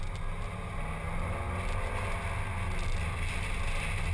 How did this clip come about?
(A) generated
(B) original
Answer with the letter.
B